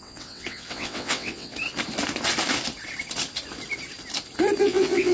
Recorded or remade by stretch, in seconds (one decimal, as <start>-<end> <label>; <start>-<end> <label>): 0.0-1.5 remade; 1.5-4.6 recorded; 4.6-5.1 remade